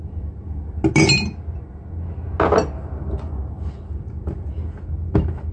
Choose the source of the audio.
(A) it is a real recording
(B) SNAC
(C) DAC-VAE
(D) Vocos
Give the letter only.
A